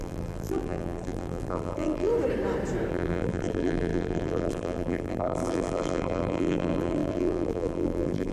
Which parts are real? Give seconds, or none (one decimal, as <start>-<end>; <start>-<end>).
2.1-2.9